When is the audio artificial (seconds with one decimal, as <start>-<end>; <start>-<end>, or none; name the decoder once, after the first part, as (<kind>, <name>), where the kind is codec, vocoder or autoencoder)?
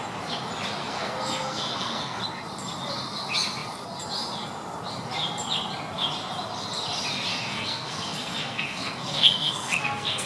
0.8-2.2 (codec, SNAC); 7.3-10.3